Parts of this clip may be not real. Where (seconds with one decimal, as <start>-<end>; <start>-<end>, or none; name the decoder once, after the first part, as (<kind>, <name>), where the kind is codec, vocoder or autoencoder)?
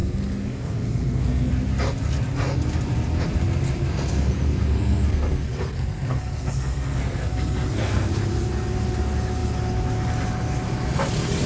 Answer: 0.0-1.5 (codec, SNAC); 3.8-8.1